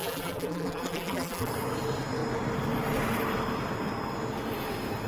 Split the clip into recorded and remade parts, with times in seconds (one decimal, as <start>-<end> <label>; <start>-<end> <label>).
0.0-1.5 remade; 1.5-5.1 recorded